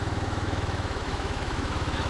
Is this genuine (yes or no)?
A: no